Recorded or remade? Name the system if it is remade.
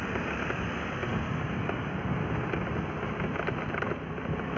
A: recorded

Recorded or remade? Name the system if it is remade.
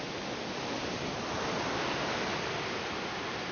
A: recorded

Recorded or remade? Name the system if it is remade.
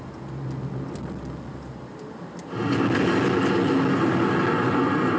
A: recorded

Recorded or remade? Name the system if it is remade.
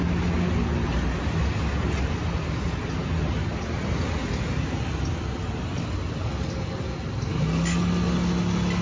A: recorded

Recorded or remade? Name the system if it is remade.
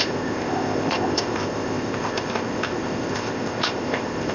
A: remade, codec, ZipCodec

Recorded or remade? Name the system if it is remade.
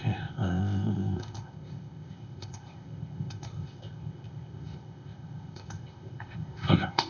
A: remade, codec, ZipCodec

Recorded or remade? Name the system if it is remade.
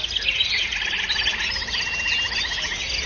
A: recorded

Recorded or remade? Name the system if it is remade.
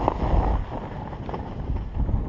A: recorded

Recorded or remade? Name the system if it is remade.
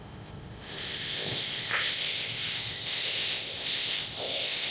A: remade, codec, ZipCodec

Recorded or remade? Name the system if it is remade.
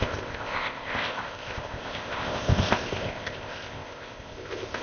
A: remade, codec, ZipCodec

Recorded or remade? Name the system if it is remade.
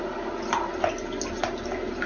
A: recorded